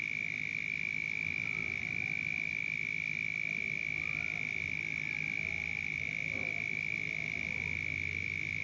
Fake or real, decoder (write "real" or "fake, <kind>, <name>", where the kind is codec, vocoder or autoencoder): real